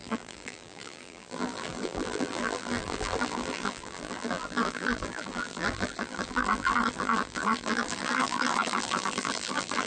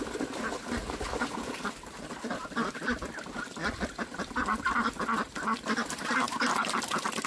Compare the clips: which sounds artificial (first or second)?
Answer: first